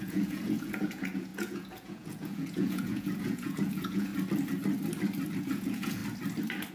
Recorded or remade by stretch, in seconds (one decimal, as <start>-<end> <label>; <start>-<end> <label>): 0.0-4.1 remade; 4.1-5.4 recorded; 5.4-6.0 remade; 6.0-6.7 recorded